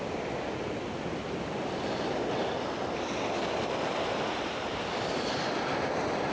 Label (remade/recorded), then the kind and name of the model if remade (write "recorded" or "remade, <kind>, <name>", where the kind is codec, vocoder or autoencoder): recorded